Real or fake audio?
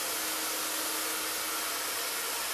real